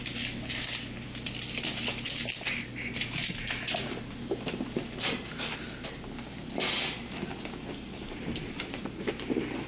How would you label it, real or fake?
real